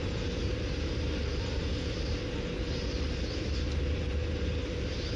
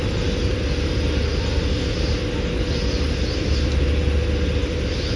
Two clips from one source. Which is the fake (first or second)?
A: first